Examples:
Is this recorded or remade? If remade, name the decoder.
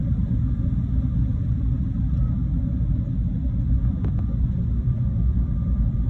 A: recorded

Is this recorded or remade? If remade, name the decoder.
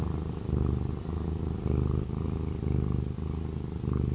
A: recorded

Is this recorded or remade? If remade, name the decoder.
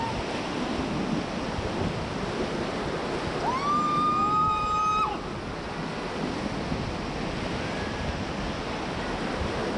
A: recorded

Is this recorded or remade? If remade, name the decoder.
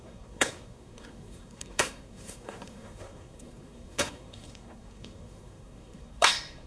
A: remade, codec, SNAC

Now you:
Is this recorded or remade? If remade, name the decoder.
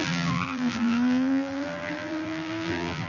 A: remade, vocoder, BigVGAN v2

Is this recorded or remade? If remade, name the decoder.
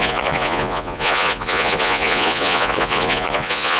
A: remade, vocoder, Vocos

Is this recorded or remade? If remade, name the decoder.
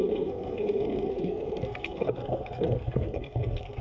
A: remade, codec, SNAC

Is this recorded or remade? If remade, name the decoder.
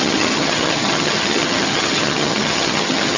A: remade, vocoder, HiFi-GAN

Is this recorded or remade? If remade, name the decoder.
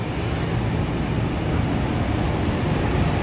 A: recorded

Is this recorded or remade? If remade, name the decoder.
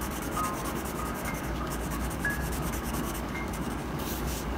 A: remade, codec, DAC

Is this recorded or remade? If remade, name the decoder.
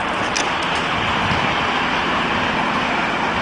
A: recorded